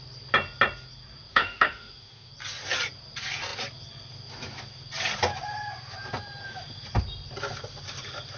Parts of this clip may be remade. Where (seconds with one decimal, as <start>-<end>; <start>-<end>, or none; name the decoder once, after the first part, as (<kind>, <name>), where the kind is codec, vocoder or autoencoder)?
1.3-2.3 (autoencoder, DAC-VAE)